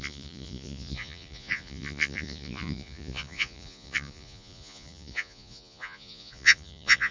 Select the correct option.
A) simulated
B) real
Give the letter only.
A